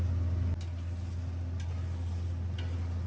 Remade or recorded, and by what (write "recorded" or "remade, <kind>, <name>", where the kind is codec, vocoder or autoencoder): recorded